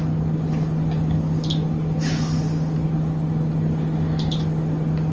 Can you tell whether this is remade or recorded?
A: recorded